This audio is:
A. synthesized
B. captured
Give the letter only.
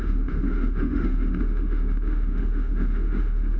A